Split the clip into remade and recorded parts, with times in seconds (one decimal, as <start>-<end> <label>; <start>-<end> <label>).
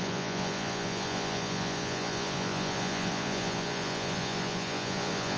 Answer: 0.0-5.4 remade